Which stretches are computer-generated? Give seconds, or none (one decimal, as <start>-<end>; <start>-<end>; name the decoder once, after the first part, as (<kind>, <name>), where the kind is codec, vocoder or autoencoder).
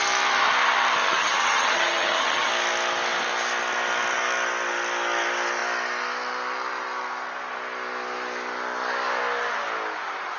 1.0-2.5 (vocoder, HiFi-GAN)